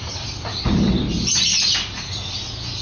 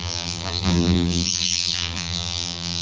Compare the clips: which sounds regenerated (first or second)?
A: second